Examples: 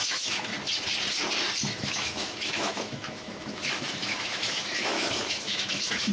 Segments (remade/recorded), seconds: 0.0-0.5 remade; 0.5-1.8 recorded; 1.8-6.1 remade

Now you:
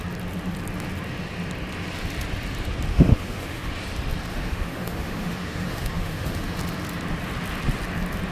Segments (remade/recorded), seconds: 0.0-2.9 recorded; 2.9-3.7 remade; 3.7-4.3 recorded; 4.3-6.6 remade; 6.6-8.3 recorded

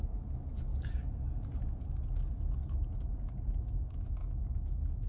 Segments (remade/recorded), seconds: 0.0-0.7 remade; 0.7-3.8 recorded; 3.8-5.1 remade

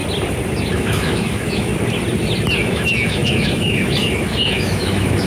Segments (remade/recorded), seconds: 0.0-0.7 recorded; 0.7-1.7 remade; 1.7-2.6 recorded; 2.6-5.3 remade